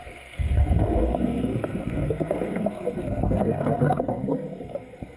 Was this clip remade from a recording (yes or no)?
yes